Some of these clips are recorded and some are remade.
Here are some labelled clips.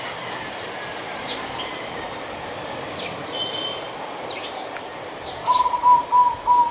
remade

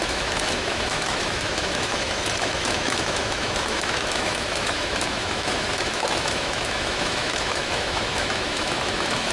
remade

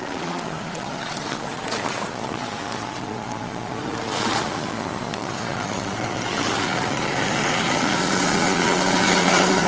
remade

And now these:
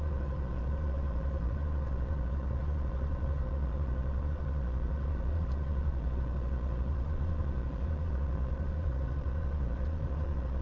remade